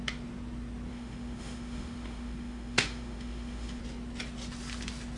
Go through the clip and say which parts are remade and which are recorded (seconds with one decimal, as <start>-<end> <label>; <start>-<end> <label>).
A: 0.0-0.9 recorded; 0.9-3.8 remade; 3.8-5.2 recorded